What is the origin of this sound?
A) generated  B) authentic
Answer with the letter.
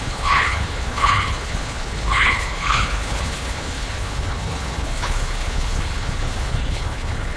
A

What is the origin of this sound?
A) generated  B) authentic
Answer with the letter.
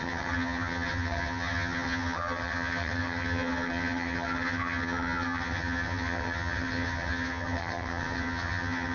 A